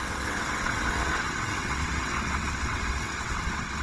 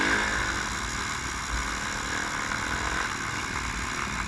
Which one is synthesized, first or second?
first